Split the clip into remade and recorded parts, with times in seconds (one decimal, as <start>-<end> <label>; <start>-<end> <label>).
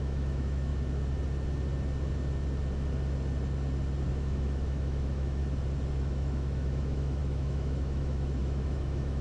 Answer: 0.0-0.7 remade; 0.7-4.1 recorded; 4.1-5.4 remade; 5.4-6.0 recorded; 6.0-9.2 remade